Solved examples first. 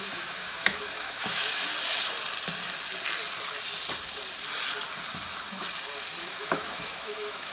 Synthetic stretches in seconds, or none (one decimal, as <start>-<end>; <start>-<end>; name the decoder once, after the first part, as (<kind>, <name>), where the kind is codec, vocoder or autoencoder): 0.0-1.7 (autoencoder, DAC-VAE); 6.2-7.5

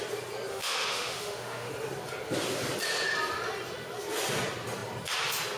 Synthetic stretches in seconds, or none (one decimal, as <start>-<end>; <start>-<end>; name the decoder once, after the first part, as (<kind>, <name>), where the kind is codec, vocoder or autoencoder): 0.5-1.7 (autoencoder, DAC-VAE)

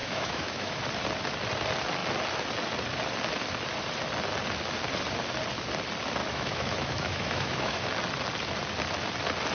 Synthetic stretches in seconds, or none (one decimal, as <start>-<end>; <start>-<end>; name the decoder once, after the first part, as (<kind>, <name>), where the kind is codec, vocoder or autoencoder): 0.0-0.8 (autoencoder, DAC-VAE); 6.2-7.8